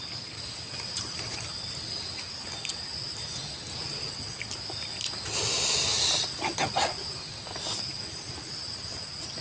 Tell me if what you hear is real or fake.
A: real